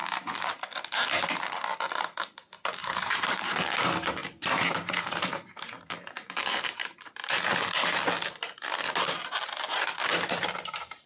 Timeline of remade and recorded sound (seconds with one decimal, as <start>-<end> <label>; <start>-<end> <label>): 0.0-0.6 remade; 0.6-2.8 recorded; 2.8-3.6 remade; 3.6-4.2 recorded; 4.2-8.0 remade; 8.0-10.1 recorded; 10.1-11.1 remade